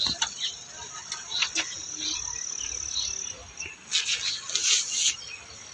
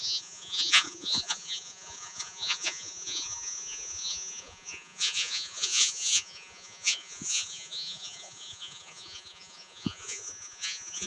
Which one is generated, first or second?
second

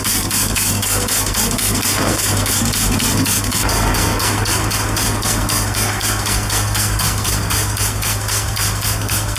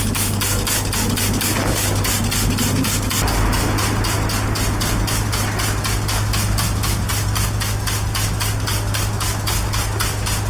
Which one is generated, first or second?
first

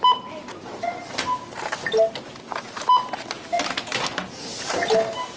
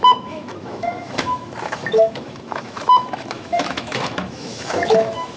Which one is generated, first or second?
second